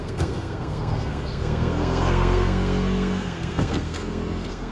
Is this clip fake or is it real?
fake